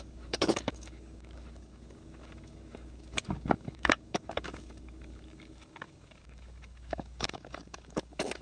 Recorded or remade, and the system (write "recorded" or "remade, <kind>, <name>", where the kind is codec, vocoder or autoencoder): remade, codec, DAC